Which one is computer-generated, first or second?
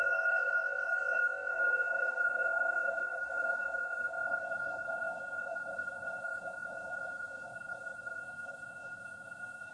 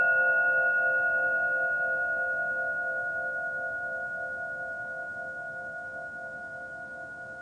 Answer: first